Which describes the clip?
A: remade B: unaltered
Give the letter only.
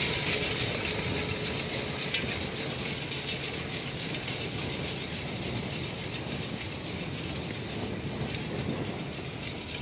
B